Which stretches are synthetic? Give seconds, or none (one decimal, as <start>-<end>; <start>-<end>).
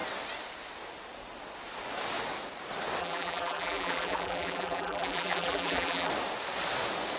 3.0-6.1